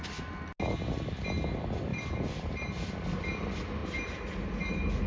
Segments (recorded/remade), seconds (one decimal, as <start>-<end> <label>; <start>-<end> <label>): 0.0-3.8 recorded; 3.8-5.1 remade